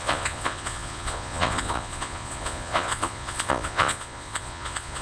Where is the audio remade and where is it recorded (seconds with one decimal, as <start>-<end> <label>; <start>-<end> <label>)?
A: 0.0-5.0 remade